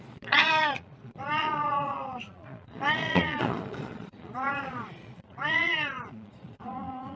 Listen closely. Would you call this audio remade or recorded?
remade